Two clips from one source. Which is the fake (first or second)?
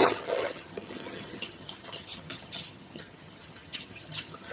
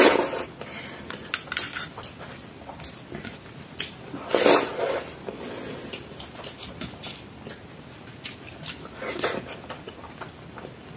first